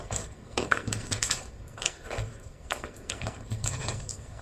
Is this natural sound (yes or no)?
no